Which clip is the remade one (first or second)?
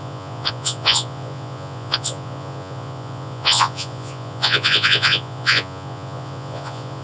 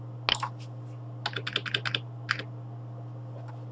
first